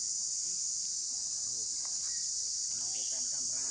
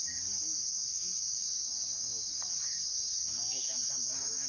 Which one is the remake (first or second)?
second